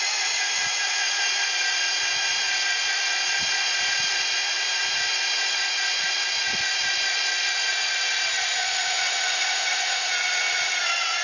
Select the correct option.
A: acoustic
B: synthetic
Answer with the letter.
B